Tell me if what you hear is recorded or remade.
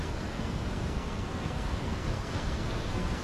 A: remade